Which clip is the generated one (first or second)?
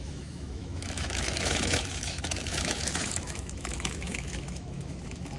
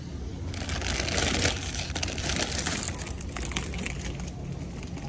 first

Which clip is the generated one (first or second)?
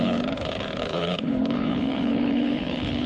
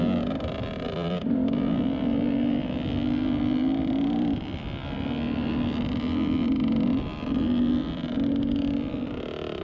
first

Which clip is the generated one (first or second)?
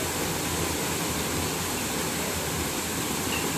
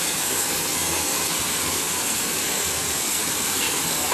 second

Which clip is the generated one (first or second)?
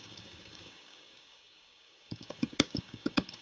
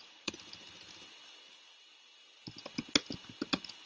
first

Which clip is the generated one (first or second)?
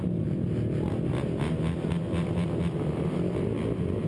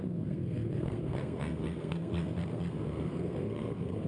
second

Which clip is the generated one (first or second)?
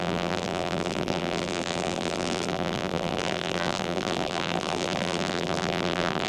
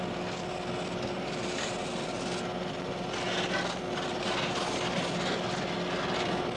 first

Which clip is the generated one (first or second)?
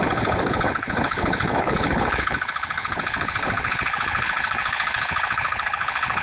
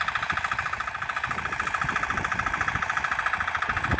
first